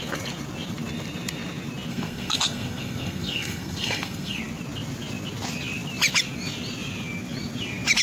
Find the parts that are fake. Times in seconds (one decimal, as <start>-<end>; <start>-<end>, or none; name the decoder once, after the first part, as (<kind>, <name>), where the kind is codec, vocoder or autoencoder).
1.9-4.4 (codec, SNAC)